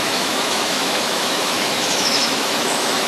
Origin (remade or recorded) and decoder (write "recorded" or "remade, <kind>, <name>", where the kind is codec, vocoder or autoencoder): remade, autoencoder, DAC-VAE